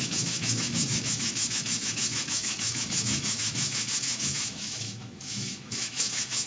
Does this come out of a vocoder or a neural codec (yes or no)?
yes